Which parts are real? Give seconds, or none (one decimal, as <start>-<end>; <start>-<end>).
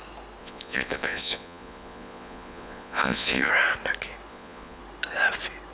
0.0-0.4; 3.5-4.3; 4.8-5.7